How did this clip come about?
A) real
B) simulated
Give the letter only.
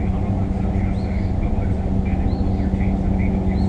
A